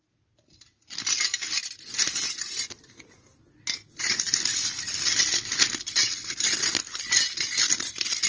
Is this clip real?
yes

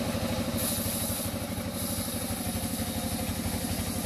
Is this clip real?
yes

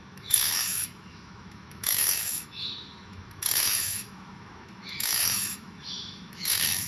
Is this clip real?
no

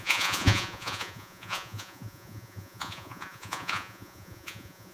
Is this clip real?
no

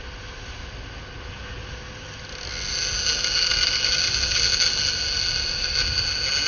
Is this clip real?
yes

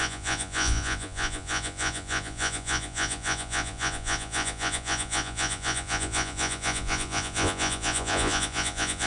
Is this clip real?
no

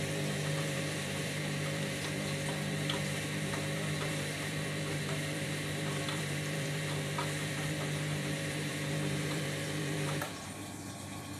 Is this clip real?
no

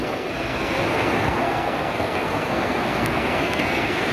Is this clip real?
no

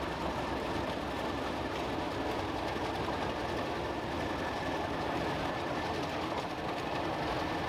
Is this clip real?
yes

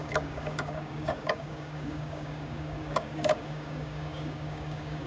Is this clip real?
no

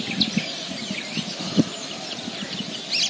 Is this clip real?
yes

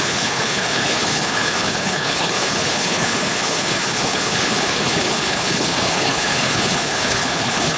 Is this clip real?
no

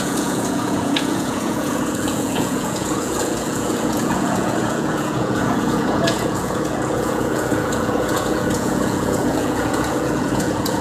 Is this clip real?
no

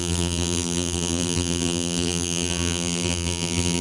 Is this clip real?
no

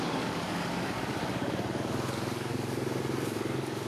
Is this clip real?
no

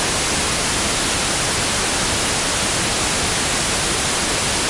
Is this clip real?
yes